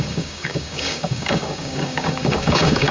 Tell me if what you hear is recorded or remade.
remade